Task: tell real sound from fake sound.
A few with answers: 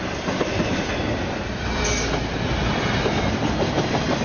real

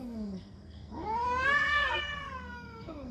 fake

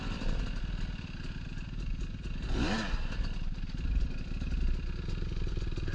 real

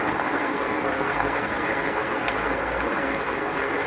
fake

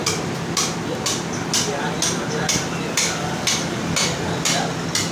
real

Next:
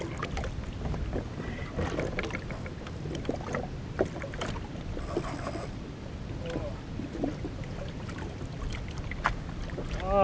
real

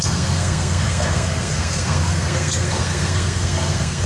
fake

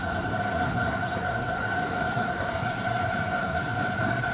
fake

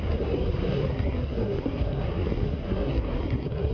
fake